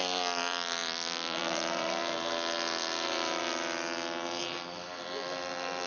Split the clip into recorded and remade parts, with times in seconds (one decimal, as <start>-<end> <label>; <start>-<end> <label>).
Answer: 0.0-2.0 remade; 2.0-4.4 recorded; 4.4-5.9 remade